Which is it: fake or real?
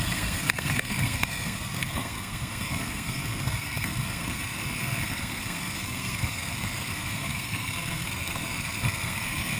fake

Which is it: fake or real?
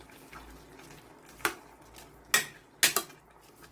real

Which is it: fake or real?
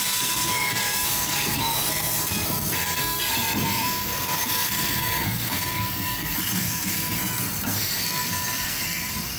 fake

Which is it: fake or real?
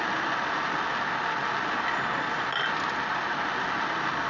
real